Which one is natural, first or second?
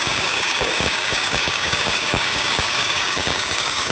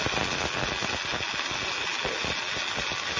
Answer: second